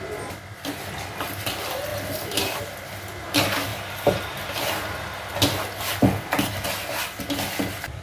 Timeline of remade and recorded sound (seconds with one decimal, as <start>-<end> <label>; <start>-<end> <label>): 0.0-8.0 recorded